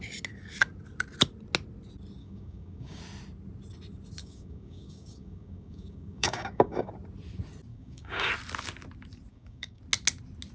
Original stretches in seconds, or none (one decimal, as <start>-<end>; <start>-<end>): 0.0-2.2; 3.0-4.2; 6.9-7.7; 8.3-9.3; 9.8-10.5